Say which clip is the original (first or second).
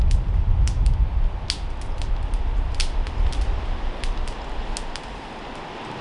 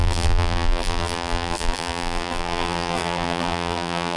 first